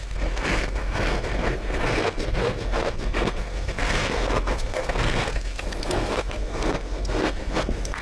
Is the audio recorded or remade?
remade